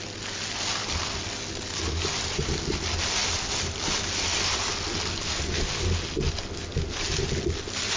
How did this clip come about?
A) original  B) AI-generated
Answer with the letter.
A